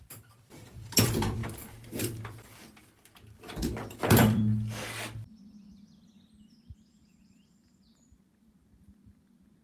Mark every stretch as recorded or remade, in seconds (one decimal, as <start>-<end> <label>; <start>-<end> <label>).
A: 0.0-4.4 remade; 4.4-5.3 recorded; 5.3-9.6 remade